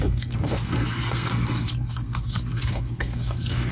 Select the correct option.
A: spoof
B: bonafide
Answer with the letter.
A